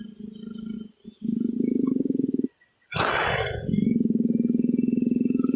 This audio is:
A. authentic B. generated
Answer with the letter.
A